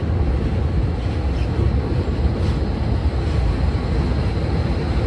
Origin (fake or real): real